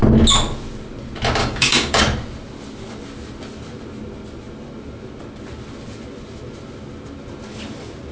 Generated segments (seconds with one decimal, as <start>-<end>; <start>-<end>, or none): 1.4-2.0